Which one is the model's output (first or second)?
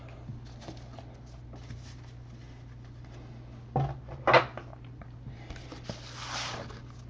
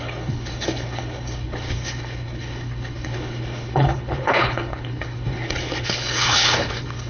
second